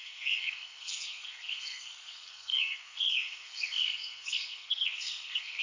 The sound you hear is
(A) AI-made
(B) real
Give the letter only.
A